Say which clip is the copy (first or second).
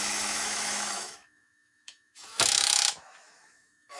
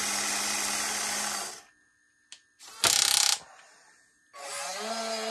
first